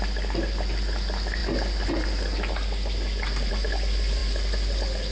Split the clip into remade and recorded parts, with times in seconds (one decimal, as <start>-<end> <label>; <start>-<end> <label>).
0.0-5.1 recorded